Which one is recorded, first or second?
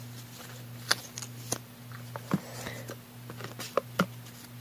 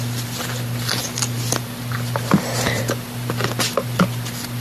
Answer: first